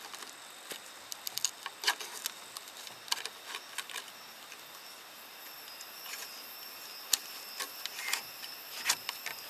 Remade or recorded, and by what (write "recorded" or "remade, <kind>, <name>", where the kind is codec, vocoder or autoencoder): recorded